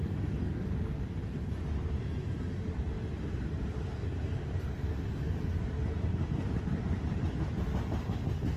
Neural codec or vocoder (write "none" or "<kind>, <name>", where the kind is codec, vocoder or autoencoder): none